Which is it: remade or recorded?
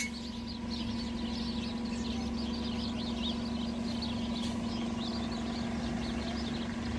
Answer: recorded